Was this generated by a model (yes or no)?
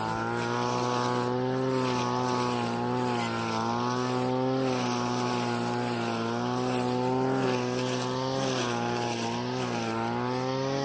no